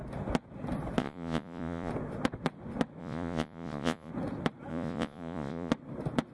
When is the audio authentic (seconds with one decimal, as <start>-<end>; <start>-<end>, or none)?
0.0-1.0; 1.9-3.0; 4.1-4.7; 5.7-6.3